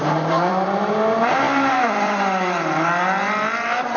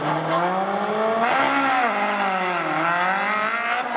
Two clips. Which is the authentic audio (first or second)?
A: second